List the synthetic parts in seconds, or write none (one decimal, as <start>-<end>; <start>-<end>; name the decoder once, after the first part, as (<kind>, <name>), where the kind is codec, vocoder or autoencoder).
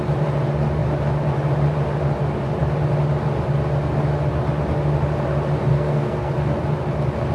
5.7-6.3 (codec, SNAC)